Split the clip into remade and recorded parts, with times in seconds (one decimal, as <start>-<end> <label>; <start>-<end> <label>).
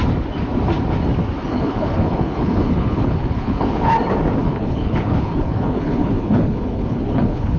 0.0-1.5 recorded; 1.5-3.9 remade; 3.9-4.4 recorded; 4.4-7.6 remade